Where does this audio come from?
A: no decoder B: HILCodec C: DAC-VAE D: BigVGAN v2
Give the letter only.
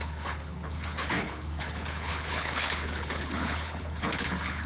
B